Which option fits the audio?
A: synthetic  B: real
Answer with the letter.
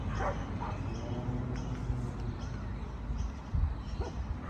B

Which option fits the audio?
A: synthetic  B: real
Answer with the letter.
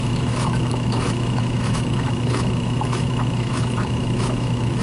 A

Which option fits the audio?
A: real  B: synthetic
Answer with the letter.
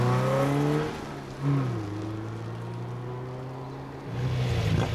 A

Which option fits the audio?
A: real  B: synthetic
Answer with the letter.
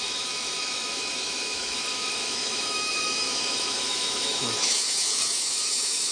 B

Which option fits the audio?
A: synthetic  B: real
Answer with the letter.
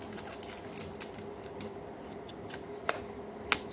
B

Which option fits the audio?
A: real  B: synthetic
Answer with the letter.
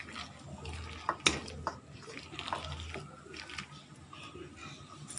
A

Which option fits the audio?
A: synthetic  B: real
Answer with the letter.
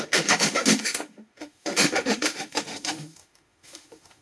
A